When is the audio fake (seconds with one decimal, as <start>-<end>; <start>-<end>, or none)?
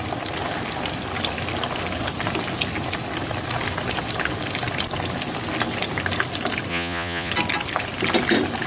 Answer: 6.7-7.3